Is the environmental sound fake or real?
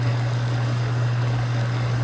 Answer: fake